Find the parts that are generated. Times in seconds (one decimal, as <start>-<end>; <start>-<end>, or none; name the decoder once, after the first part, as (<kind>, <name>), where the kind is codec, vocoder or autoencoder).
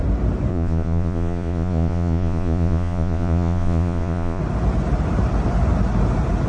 0.5-4.4 (vocoder, Vocos)